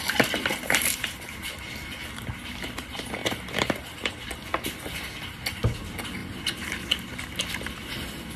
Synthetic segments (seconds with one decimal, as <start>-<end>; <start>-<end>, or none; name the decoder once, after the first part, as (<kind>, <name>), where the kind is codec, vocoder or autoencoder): 0.5-1.7 (vocoder, BigVGAN v2); 3.2-4.1; 6.2-6.8